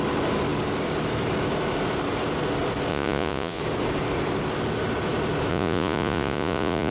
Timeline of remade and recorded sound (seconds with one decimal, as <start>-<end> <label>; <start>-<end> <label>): 0.0-2.9 recorded; 2.9-3.6 remade; 3.6-5.5 recorded; 5.5-6.9 remade

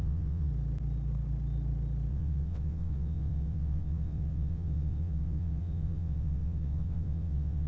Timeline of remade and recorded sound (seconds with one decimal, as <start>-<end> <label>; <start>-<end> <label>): 0.0-0.5 remade; 0.5-2.1 recorded; 2.1-7.7 remade

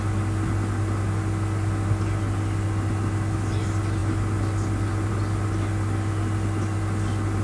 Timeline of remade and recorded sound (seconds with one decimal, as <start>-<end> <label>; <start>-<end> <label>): 0.0-7.4 recorded

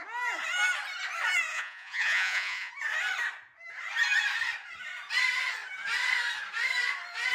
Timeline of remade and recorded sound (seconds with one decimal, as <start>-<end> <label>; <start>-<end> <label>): 0.0-1.5 recorded; 1.5-2.7 remade; 2.7-7.3 recorded

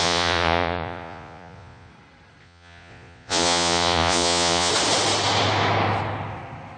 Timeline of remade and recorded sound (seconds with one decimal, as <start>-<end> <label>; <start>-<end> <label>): 0.0-1.9 remade; 1.9-2.4 recorded; 2.4-4.7 remade; 4.7-6.8 recorded